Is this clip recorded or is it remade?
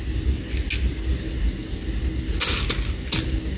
recorded